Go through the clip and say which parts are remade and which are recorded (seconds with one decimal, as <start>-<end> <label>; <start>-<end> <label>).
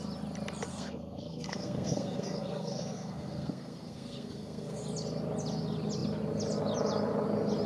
0.0-0.7 recorded; 0.7-4.8 remade; 4.8-7.7 recorded